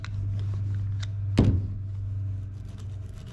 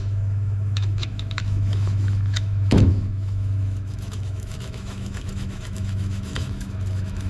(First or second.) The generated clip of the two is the second